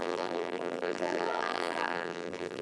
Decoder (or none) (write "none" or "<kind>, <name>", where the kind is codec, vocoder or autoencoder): vocoder, BigVGAN v2